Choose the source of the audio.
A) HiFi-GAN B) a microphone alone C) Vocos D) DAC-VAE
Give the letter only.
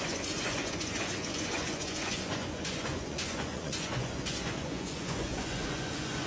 C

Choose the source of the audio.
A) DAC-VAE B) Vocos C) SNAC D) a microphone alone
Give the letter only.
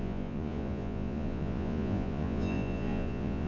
B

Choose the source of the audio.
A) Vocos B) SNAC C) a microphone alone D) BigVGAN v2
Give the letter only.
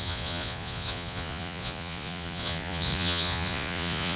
A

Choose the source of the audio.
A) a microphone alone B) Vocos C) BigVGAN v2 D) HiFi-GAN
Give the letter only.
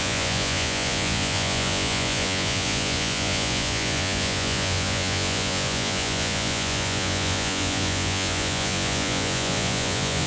B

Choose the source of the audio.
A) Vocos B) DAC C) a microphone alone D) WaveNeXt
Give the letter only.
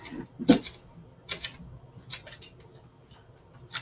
C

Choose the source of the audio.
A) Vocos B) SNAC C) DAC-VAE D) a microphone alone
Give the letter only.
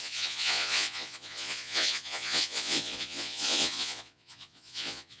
A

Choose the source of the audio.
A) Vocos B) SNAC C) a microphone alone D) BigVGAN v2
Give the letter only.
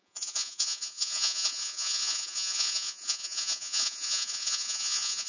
A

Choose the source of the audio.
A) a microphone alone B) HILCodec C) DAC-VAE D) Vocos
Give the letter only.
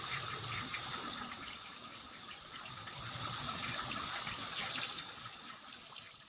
A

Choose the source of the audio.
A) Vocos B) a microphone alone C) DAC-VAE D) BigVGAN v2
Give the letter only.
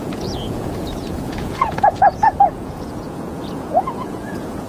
A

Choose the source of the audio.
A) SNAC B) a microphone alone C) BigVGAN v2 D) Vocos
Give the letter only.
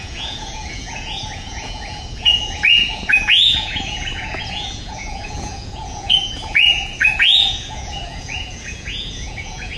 D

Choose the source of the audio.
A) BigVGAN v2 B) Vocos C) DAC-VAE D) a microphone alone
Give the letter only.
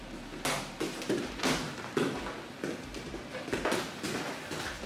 D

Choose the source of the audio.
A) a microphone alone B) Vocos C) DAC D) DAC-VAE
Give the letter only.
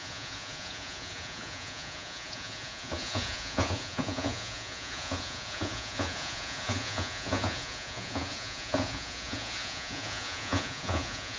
B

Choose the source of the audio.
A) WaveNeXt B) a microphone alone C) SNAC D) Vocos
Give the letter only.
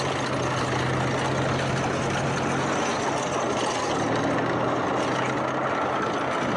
B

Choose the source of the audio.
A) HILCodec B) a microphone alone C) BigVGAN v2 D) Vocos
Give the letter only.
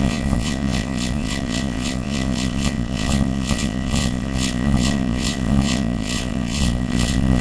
D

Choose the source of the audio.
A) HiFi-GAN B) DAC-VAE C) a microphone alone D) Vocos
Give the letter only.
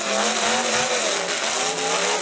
C